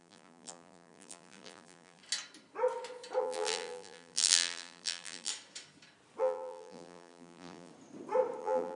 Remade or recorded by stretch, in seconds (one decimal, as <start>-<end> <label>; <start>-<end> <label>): 0.0-2.0 remade; 2.0-3.2 recorded; 3.2-5.3 remade; 5.3-6.2 recorded; 6.2-7.7 remade; 7.7-8.4 recorded; 8.4-8.8 remade